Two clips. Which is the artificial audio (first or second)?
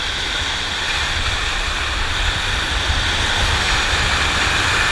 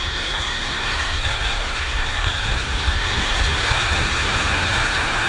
second